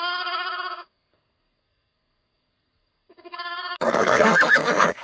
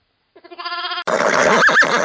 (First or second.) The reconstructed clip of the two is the first